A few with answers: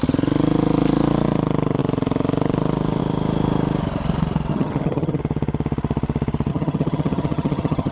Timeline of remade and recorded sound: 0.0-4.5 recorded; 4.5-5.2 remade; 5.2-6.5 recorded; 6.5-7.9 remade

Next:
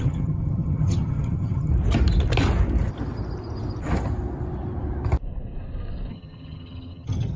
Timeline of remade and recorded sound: 0.0-1.7 remade; 1.7-6.1 recorded; 6.1-7.4 remade

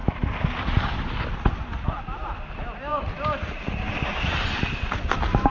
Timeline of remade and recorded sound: 0.0-5.5 recorded

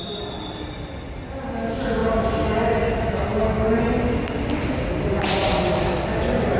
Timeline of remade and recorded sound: 0.0-6.6 recorded

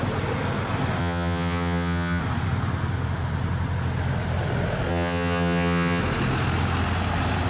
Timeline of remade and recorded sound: 0.0-1.0 recorded; 1.0-2.2 remade; 2.2-4.9 recorded; 4.9-6.0 remade; 6.0-7.5 recorded

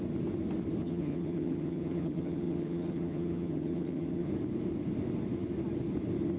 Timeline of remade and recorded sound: 0.0-0.8 recorded; 0.8-4.3 remade; 4.3-6.4 recorded

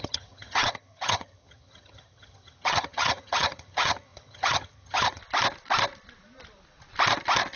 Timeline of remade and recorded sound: 0.0-5.2 remade; 5.2-7.6 recorded

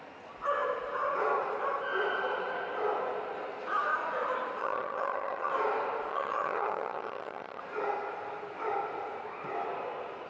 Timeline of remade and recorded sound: 0.0-4.6 recorded; 4.6-5.5 remade; 5.5-6.1 recorded; 6.1-7.6 remade; 7.6-10.3 recorded